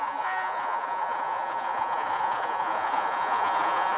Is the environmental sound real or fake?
fake